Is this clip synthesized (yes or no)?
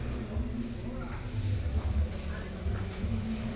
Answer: no